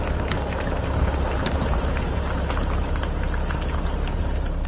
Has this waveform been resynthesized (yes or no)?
no